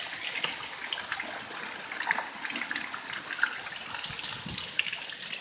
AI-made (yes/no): no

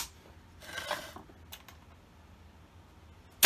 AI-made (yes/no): no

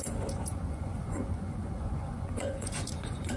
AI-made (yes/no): yes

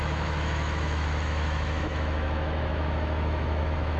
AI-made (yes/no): yes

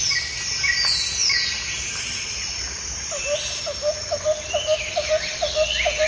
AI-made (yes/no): no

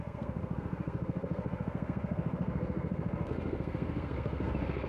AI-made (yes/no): yes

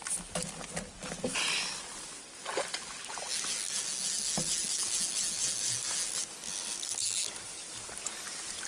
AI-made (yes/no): no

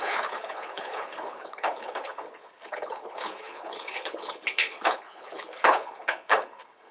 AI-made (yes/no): yes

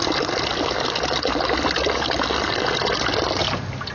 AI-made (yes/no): no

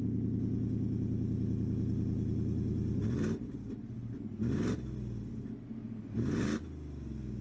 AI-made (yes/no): no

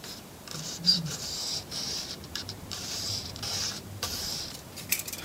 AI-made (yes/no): yes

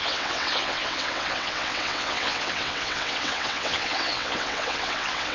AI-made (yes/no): yes